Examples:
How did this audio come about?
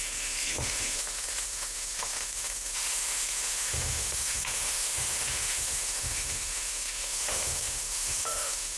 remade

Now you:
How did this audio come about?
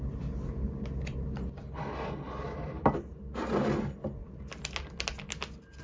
recorded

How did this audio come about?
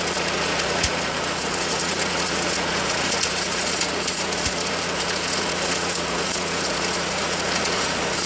remade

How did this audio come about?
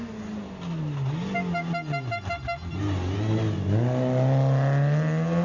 recorded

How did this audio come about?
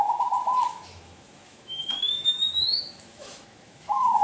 remade